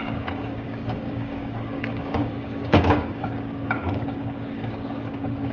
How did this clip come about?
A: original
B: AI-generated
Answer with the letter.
B